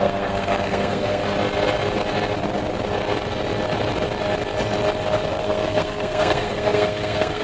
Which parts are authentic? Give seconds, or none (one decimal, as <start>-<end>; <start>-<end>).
1.2-5.3